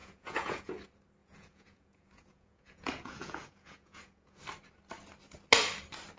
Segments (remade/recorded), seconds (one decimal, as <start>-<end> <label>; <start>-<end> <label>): 0.0-0.7 remade; 0.7-1.2 recorded; 1.2-4.4 remade; 4.4-6.2 recorded